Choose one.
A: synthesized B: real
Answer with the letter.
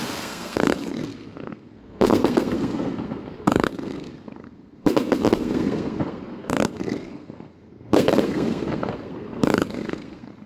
A